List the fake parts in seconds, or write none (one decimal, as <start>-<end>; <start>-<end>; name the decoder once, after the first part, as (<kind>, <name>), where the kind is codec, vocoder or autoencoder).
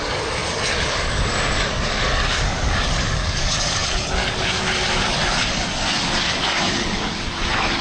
0.0-7.8 (codec, DAC)